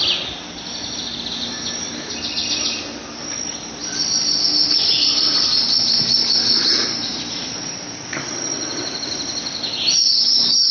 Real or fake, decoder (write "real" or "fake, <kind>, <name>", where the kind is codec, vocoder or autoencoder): real